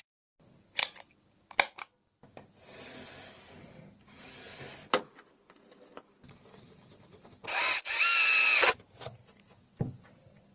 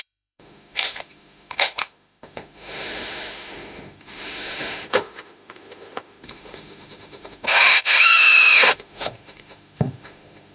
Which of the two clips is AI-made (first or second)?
second